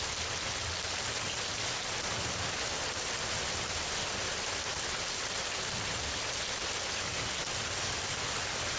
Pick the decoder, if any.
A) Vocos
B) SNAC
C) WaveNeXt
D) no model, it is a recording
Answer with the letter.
D